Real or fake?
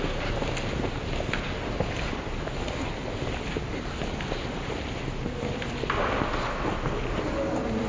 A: real